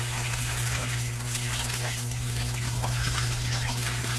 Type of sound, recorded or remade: remade